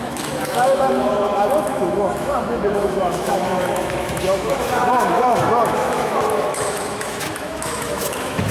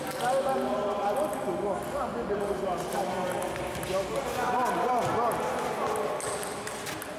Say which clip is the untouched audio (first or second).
second